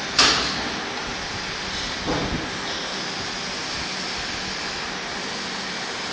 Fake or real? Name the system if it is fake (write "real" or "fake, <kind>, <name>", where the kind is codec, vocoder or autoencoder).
real